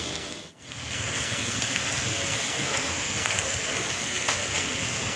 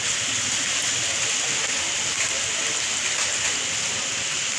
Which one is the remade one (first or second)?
first